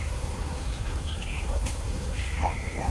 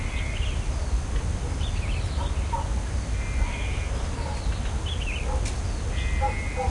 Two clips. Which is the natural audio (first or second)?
second